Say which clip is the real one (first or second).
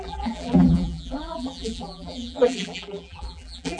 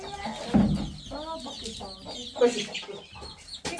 second